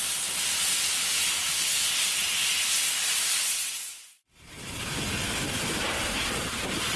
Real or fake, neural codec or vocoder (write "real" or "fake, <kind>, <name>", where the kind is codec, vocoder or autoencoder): real